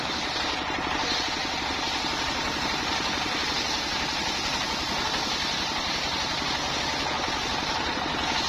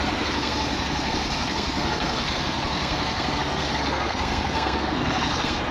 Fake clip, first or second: second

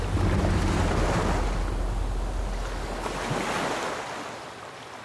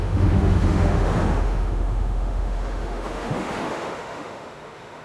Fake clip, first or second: second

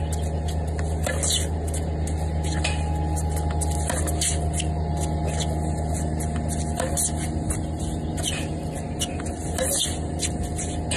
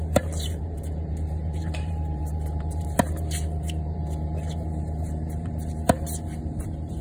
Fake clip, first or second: second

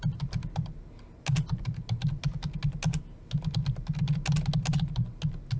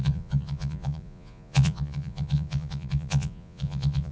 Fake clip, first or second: second